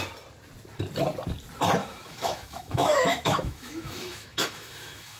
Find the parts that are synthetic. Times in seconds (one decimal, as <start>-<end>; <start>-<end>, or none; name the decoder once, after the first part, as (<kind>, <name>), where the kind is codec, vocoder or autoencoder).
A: 1.8-5.2 (autoencoder, DAC-VAE)